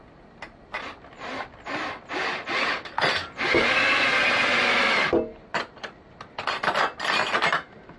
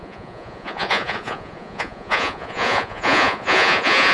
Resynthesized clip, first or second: second